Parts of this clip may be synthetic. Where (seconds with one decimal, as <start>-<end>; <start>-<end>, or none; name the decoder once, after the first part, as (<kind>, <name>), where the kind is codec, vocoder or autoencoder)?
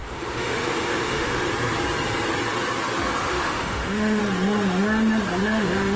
0.0-1.5 (autoencoder, DAC-VAE); 3.2-4.2; 5.4-6.0